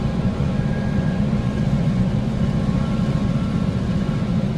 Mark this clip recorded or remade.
remade